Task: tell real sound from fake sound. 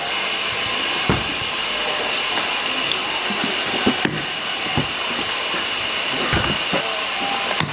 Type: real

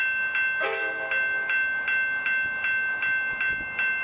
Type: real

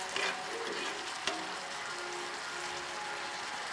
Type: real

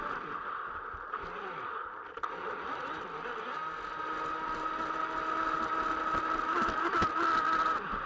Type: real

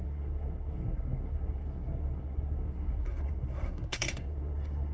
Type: fake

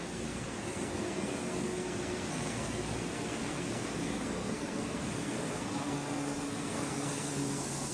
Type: fake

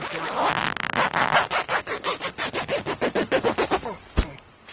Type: real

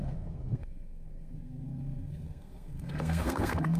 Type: fake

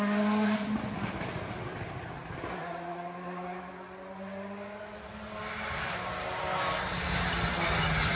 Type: real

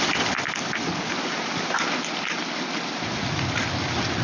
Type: real